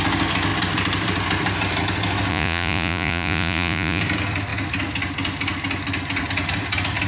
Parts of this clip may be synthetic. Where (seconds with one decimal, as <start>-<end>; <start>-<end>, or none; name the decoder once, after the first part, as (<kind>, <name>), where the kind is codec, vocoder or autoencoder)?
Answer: 2.3-4.0 (vocoder, Vocos)